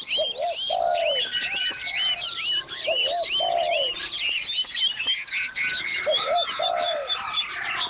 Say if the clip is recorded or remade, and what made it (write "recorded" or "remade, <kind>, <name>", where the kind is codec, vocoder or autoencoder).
recorded